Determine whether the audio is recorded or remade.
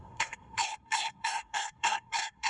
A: remade